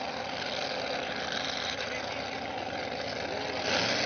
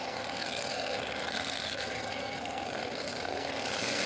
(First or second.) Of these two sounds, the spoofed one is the second